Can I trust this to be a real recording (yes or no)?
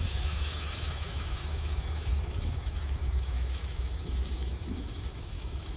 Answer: no